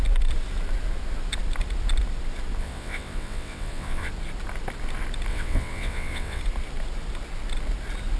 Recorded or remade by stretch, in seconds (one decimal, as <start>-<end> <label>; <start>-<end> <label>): 0.0-2.6 recorded; 2.6-4.1 remade; 4.1-5.3 recorded; 5.3-6.4 remade; 6.4-8.2 recorded